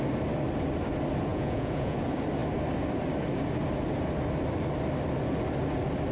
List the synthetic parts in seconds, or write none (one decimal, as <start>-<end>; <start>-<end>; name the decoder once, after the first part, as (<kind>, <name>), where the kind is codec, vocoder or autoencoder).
1.3-2.0 (vocoder, Vocos)